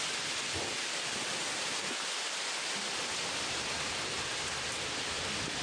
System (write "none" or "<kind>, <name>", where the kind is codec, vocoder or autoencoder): none